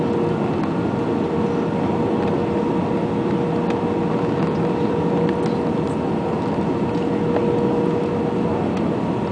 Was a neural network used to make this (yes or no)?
no